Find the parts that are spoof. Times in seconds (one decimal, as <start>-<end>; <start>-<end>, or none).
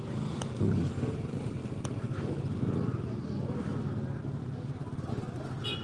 none